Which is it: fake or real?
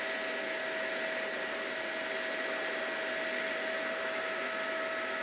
real